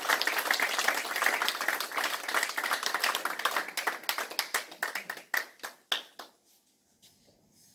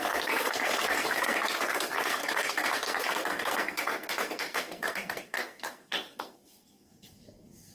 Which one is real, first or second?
first